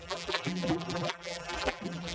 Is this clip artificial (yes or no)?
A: yes